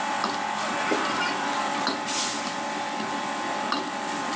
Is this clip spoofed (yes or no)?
no